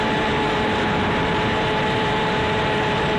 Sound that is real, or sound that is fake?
fake